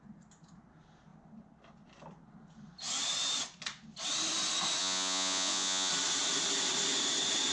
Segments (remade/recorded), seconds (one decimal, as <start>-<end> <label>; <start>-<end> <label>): 0.0-4.8 recorded; 4.8-5.9 remade; 5.9-7.5 recorded